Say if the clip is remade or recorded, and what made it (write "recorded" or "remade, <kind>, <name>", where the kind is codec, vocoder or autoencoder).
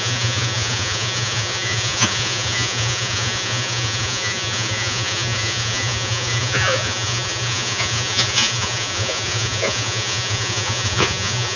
remade, vocoder, Vocos